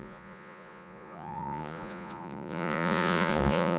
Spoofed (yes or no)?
yes